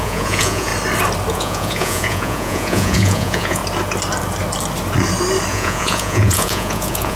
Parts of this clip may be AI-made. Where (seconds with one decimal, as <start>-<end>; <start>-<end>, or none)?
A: 0.0-0.7; 1.3-3.6; 5.5-7.2